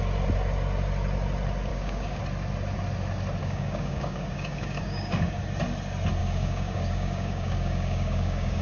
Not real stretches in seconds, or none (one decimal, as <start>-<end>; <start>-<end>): 1.7-2.2; 3.4-5.4; 6.2-8.6